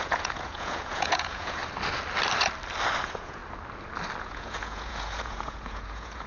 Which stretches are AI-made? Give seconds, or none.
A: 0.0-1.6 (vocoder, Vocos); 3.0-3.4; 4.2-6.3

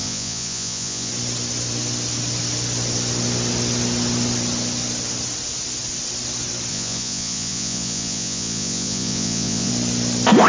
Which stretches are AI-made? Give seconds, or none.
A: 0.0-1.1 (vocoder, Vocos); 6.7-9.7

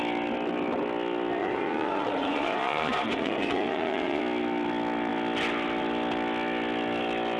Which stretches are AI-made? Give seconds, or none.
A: 1.4-4.2 (vocoder, Vocos)

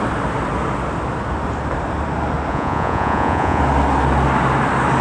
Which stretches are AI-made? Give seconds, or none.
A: 2.5-3.6 (vocoder, Vocos)